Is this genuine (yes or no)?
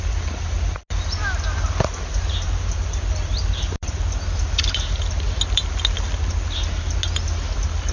yes